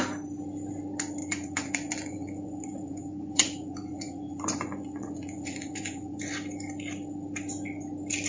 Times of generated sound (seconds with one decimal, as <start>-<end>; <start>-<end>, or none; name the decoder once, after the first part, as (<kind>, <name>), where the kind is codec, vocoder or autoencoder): 1.2-6.2 (vocoder, Vocos)

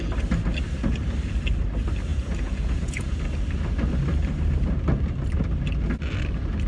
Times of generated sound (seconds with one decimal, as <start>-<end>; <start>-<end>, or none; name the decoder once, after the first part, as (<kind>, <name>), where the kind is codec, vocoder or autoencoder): 2.1-3.2 (vocoder, Vocos)

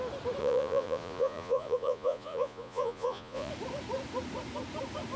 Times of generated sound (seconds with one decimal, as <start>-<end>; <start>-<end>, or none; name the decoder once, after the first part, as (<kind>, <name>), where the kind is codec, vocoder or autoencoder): 0.4-3.5 (vocoder, Vocos)

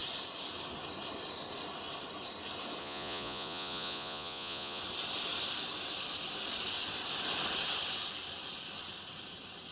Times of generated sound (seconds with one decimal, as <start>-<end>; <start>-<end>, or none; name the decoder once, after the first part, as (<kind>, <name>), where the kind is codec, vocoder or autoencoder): 2.8-4.8 (vocoder, Vocos)

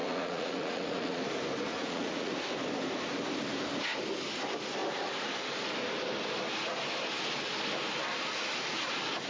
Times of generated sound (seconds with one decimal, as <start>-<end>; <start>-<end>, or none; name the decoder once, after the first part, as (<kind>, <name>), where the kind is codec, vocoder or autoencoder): 0.0-1.2 (vocoder, Vocos); 1.7-2.3

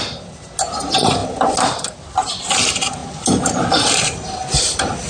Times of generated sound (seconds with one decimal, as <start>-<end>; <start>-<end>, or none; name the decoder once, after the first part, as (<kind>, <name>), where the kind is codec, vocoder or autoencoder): none

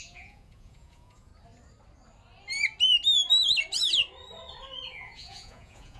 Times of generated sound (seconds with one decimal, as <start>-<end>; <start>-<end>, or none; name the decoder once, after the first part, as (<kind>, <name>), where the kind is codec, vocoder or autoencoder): 0.0-1.3 (vocoder, Vocos); 4.9-6.0